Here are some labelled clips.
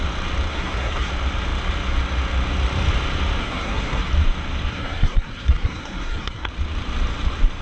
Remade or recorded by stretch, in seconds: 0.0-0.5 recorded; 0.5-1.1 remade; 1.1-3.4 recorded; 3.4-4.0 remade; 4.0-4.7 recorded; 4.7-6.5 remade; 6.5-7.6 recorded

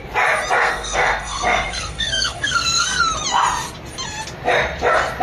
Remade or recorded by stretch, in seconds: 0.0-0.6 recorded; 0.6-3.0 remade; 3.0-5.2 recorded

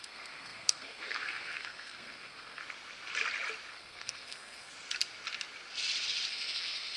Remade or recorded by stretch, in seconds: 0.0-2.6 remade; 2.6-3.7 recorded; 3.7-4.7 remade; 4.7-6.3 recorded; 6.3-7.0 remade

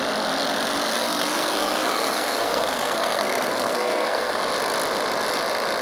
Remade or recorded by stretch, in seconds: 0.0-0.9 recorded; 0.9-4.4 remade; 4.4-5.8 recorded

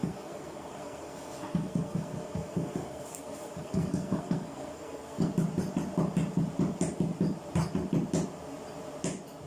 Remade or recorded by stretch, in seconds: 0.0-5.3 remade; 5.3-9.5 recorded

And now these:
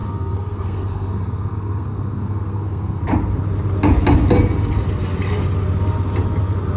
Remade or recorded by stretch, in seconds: 0.0-3.0 remade; 3.0-6.8 recorded

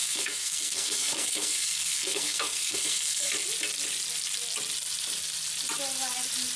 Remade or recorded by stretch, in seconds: 0.0-3.3 remade; 3.3-6.6 recorded

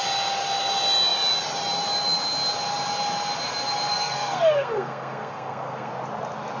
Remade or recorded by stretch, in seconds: 0.0-3.9 recorded; 3.9-5.9 remade; 5.9-6.6 recorded